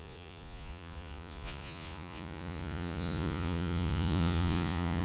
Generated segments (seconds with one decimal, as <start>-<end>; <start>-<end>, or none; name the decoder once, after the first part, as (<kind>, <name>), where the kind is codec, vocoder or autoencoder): 0.0-5.0 (vocoder, Vocos)